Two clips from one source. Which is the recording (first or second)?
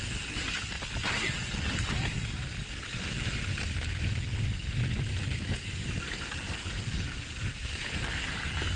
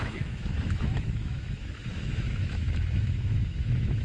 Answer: first